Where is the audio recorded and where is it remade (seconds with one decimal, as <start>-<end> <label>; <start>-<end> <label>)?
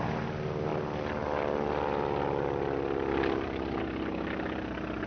0.0-5.1 recorded